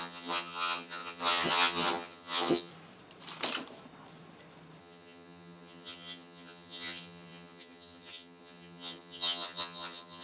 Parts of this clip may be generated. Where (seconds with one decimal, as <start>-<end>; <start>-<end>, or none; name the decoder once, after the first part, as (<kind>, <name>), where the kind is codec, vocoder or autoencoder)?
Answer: 0.0-2.7 (vocoder, HiFi-GAN); 4.8-10.2